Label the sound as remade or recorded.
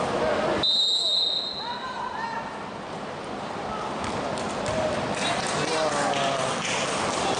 recorded